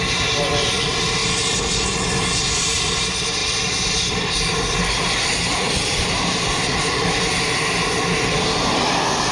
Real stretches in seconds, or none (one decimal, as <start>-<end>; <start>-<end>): 0.0-3.4; 7.2-9.3